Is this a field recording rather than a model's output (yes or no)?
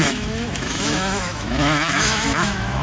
no